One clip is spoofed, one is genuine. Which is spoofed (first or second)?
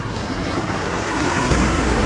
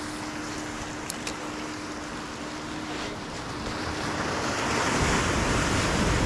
first